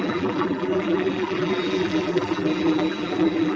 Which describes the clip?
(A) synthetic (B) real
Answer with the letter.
A